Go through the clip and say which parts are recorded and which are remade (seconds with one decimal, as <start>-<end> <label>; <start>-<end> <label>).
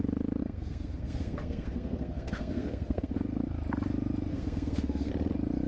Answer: 0.0-0.4 recorded; 0.4-3.1 remade; 3.1-4.3 recorded; 4.3-5.1 remade; 5.1-5.7 recorded